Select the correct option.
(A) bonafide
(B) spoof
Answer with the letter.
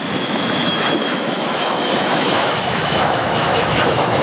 B